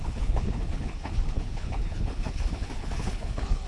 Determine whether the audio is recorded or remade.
remade